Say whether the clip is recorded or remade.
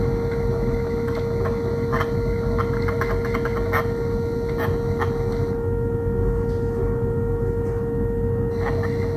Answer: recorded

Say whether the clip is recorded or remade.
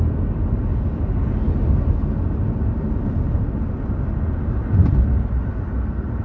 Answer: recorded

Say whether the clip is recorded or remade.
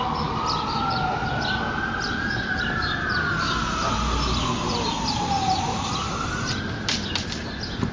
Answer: recorded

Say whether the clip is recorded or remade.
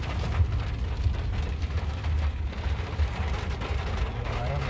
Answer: recorded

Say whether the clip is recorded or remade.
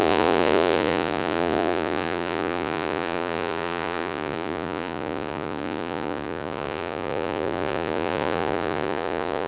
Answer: remade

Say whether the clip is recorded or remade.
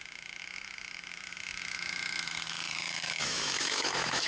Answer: remade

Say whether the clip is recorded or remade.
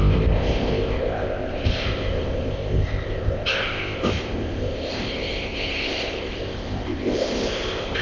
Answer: remade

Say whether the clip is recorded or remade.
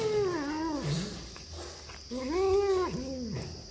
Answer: recorded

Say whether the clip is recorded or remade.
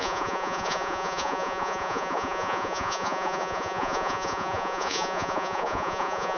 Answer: remade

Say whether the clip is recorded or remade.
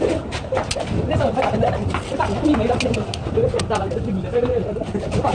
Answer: recorded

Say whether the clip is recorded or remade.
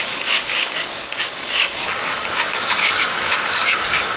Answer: remade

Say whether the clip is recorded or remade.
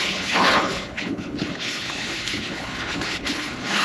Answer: remade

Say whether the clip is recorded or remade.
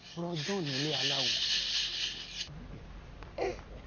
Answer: recorded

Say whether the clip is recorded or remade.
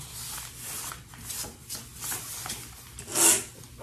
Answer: recorded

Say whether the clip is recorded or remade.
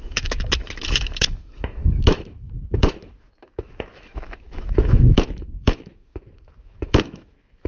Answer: remade